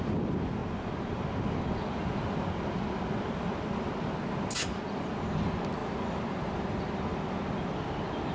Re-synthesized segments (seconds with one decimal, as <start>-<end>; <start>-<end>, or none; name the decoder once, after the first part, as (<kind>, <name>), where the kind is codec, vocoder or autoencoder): none